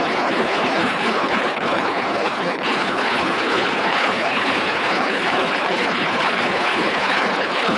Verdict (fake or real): fake